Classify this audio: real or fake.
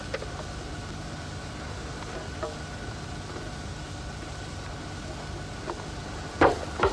real